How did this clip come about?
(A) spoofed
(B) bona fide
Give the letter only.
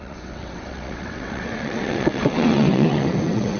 A